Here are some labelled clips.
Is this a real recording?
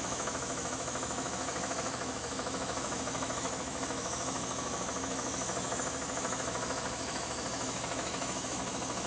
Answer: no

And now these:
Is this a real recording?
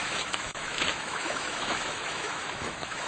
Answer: no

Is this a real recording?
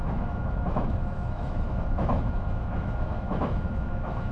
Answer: no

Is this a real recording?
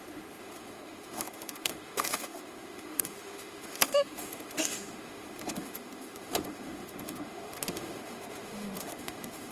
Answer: no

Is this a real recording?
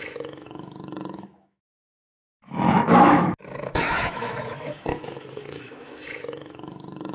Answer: no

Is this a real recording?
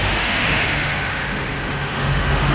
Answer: no